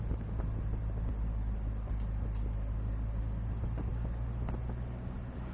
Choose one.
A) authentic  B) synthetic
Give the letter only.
A